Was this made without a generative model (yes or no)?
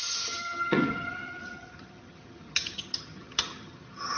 no